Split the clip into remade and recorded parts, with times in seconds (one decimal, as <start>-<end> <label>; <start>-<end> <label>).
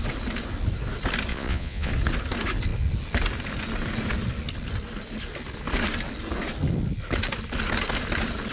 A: 0.0-1.3 recorded; 1.3-1.9 remade; 1.9-8.5 recorded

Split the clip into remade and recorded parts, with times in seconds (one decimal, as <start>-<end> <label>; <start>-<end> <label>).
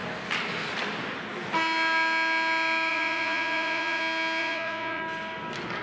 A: 0.0-2.9 recorded; 2.9-4.0 remade; 4.0-4.4 recorded; 4.4-5.0 remade; 5.0-5.8 recorded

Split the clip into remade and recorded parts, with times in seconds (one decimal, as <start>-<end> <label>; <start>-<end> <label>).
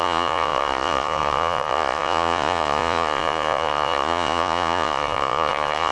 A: 0.0-5.9 remade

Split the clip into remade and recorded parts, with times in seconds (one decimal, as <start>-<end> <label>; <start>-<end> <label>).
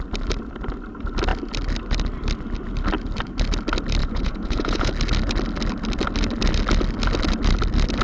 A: 0.0-4.0 recorded; 4.0-4.9 remade; 4.9-8.0 recorded